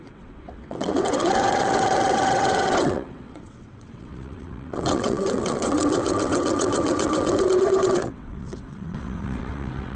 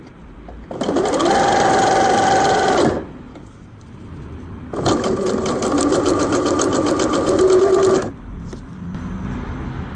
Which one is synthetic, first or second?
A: first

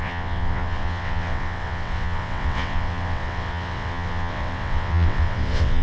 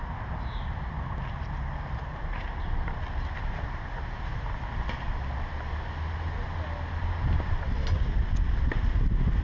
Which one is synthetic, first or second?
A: first